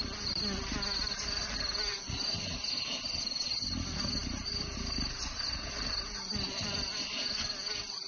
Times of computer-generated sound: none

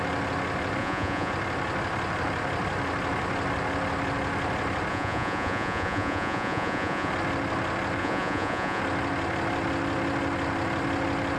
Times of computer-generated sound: 0.8-1.3 (vocoder, Vocos); 4.9-7.1; 8.0-8.8

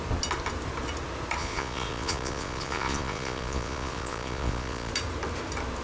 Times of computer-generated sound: 1.4-4.9 (vocoder, Vocos)

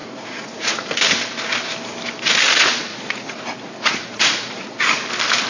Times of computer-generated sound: 0.0-0.9 (vocoder, Vocos); 2.9-5.0

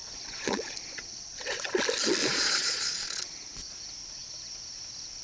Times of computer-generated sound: 0.0-1.8 (vocoder, Vocos); 2.2-3.7

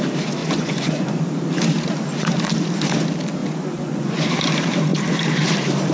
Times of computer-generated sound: 0.4-1.2 (vocoder, Vocos); 3.4-4.3